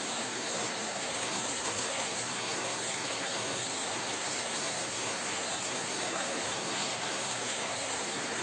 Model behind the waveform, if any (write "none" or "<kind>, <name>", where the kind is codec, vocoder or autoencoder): codec, SNAC